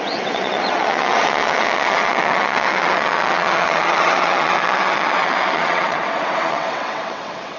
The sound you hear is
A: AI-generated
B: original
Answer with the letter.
A